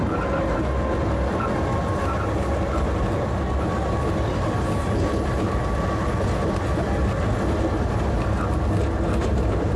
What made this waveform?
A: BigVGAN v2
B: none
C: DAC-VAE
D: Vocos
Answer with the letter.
B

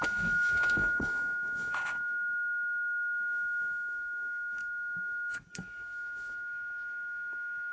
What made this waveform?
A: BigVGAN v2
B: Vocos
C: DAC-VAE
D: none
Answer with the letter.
C